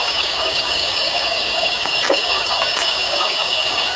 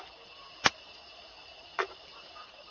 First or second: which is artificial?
first